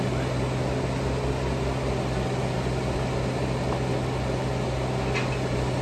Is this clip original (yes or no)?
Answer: yes